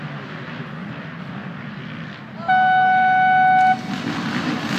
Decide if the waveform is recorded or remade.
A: recorded